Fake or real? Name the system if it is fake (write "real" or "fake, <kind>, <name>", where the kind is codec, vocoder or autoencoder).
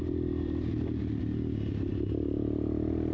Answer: real